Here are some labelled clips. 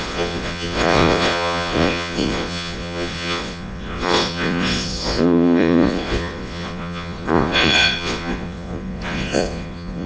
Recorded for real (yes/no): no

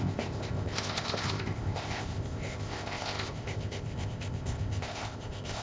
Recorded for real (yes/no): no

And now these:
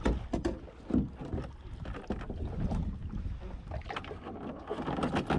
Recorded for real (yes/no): yes